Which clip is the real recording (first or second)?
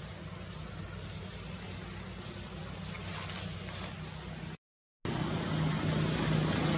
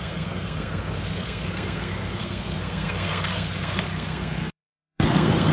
first